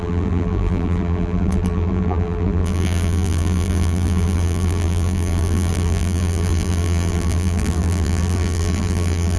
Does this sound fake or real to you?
fake